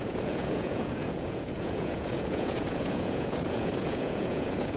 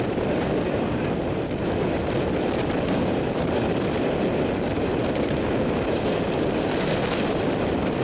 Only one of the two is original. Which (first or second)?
second